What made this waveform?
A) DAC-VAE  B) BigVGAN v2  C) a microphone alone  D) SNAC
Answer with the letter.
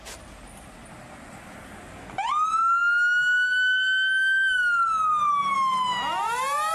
C